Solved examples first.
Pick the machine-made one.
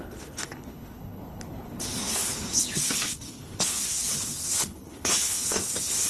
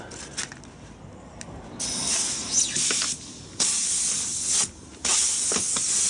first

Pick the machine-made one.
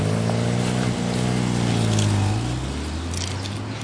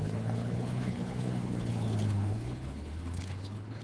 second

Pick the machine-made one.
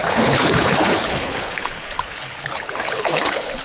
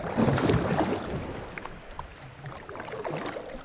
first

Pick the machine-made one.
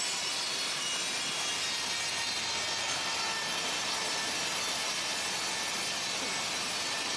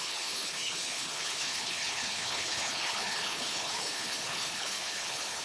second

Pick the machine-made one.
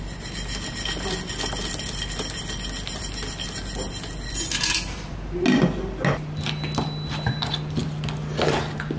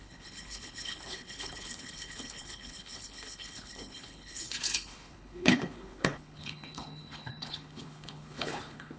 second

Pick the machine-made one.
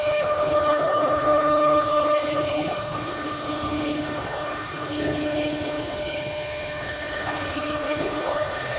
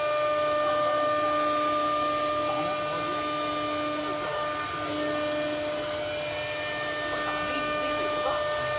first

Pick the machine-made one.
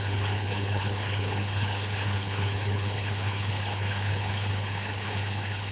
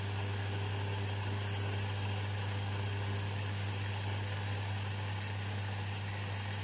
first